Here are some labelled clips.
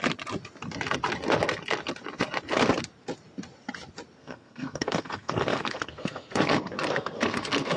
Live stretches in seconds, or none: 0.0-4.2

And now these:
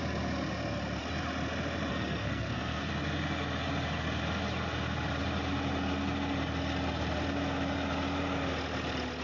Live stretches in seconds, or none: 0.0-1.9; 2.9-9.2

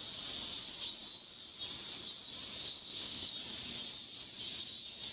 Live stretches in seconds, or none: 0.0-2.6; 3.3-5.1

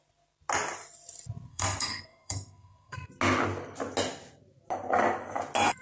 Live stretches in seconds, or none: 0.0-1.5; 3.1-5.8

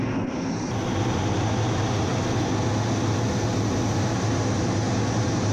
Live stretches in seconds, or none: 0.0-5.5